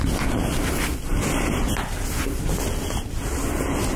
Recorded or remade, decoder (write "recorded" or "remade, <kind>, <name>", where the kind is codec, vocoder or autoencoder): recorded